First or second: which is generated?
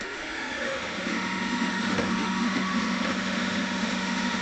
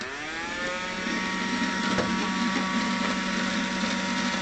first